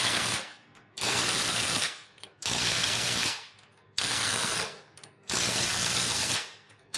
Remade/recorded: remade